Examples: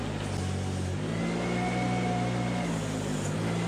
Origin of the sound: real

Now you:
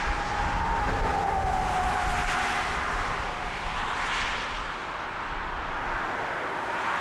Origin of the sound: real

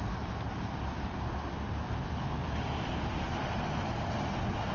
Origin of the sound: real